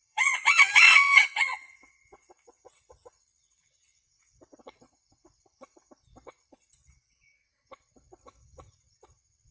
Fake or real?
fake